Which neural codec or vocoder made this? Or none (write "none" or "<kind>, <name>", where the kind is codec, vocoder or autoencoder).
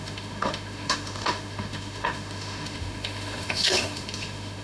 autoencoder, DAC-VAE